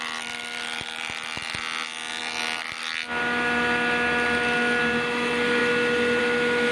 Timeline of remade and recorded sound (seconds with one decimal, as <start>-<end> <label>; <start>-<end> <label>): 0.0-6.7 recorded